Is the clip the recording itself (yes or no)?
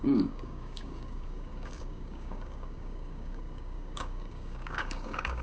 no